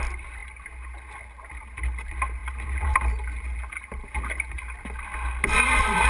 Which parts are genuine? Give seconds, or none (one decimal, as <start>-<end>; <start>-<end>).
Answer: 0.0-6.1